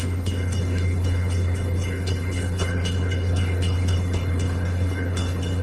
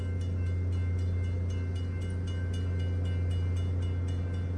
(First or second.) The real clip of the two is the second